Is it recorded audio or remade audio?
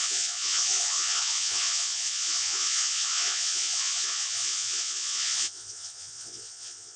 remade